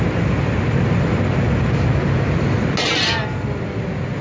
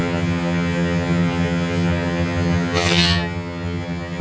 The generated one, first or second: second